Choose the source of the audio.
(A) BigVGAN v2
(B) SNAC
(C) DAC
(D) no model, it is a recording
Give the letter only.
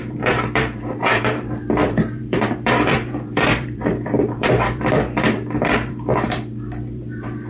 A